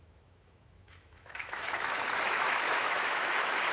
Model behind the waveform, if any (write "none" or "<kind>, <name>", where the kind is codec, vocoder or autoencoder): autoencoder, DAC-VAE